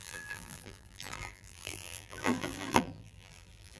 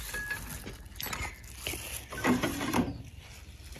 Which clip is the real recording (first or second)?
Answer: second